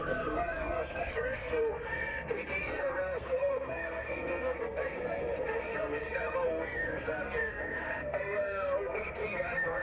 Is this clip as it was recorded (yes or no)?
no